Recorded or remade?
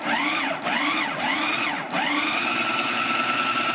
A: recorded